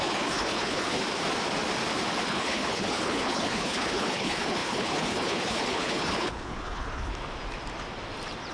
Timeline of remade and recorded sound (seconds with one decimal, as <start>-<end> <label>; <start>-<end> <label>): 0.0-1.0 remade; 1.0-2.2 recorded; 2.2-7.1 remade; 7.1-8.5 recorded

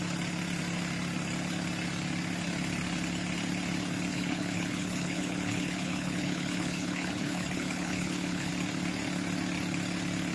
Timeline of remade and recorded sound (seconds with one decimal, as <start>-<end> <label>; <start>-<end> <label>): 0.0-4.1 recorded; 4.1-8.5 remade; 8.5-10.3 recorded

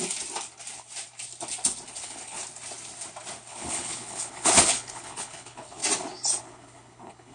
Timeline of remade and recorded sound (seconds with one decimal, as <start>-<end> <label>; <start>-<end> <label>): 0.0-1.9 recorded; 1.9-2.4 remade; 2.4-3.5 recorded; 3.5-5.8 remade; 5.8-6.4 recorded; 6.4-7.3 remade

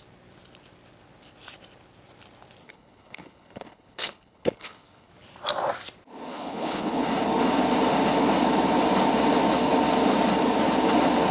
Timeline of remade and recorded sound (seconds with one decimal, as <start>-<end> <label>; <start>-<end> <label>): 0.0-2.6 recorded; 2.6-5.1 remade; 5.1-6.3 recorded; 6.3-7.0 remade; 7.0-11.3 recorded